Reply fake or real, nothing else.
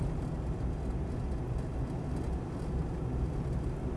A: fake